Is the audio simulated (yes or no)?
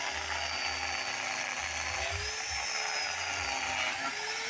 no